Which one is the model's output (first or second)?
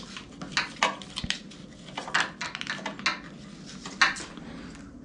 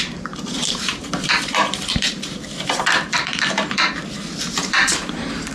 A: second